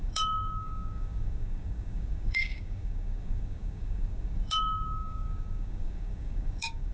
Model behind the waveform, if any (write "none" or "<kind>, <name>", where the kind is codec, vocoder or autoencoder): codec, DAC